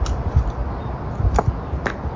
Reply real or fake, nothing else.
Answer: real